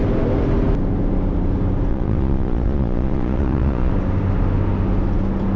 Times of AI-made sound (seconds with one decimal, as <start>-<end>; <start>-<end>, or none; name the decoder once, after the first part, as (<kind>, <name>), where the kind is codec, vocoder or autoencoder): 1.9-3.9 (vocoder, Vocos)